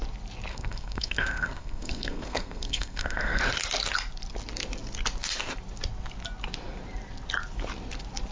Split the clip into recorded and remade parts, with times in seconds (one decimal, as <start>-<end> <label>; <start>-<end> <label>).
0.0-0.5 recorded; 0.5-3.4 remade; 3.4-8.3 recorded